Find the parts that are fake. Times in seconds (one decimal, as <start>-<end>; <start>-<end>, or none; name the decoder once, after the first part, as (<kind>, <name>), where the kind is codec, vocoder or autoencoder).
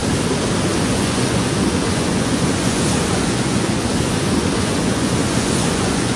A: 0.8-6.2 (vocoder, Vocos)